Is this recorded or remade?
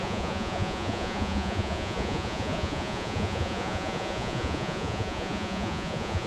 remade